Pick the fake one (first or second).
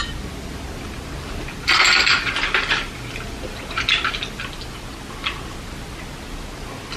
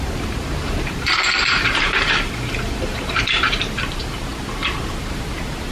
second